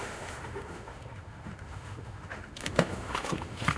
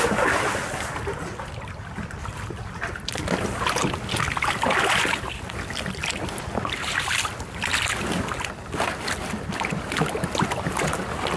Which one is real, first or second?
second